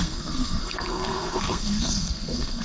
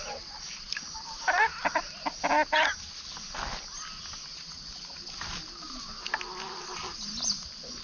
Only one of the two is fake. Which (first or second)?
first